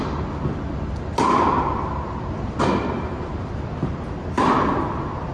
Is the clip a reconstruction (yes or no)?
no